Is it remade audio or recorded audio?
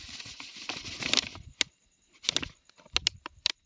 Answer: recorded